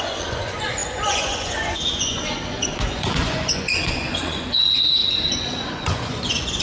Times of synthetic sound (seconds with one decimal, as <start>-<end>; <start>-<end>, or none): 0.0-6.6